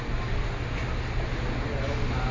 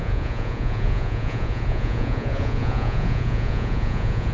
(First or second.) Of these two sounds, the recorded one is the first